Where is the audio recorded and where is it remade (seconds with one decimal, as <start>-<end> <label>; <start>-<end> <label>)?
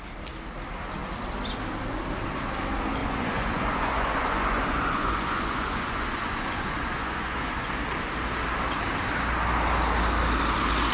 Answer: 0.0-3.0 recorded; 3.0-7.7 remade; 7.7-10.9 recorded